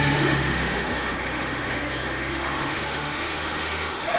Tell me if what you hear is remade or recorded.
remade